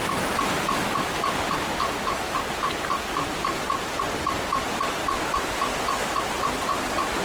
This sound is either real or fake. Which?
real